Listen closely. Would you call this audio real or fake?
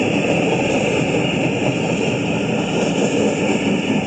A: real